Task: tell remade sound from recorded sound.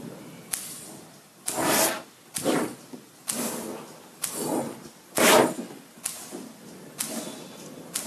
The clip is recorded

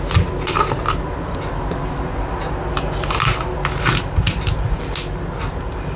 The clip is recorded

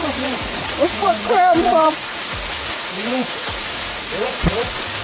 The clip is remade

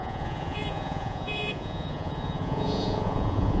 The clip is remade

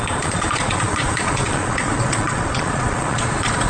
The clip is remade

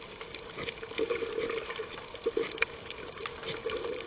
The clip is recorded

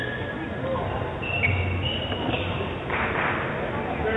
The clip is recorded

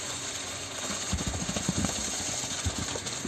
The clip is remade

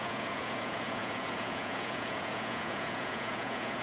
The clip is remade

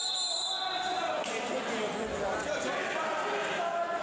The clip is recorded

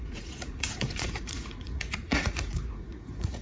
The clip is remade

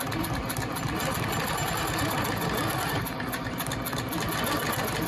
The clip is recorded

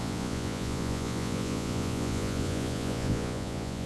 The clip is remade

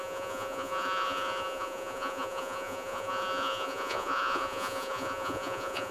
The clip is remade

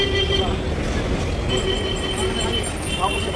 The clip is recorded